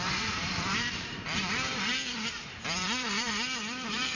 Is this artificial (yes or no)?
yes